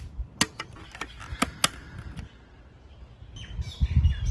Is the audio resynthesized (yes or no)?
no